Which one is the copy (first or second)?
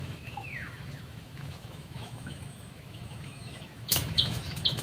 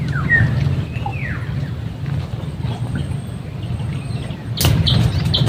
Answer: first